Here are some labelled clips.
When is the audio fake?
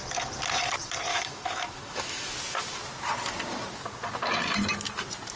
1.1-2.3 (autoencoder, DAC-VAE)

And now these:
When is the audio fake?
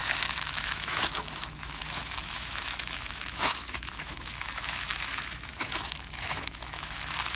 0.0-7.4 (autoencoder, DAC-VAE)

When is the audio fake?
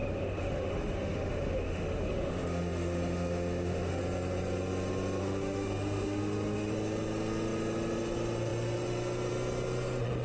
0.0-4.0 (autoencoder, DAC-VAE); 5.2-6.7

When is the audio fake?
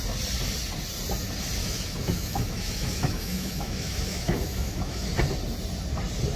1.6-5.1 (autoencoder, DAC-VAE)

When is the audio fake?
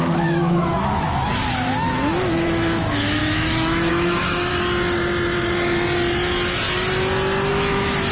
0.0-4.5 (autoencoder, DAC-VAE); 7.5-8.1